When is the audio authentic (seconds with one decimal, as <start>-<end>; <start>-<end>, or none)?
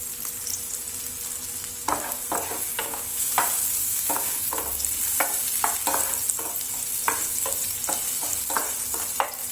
0.0-2.8; 3.3-3.8; 4.5-9.5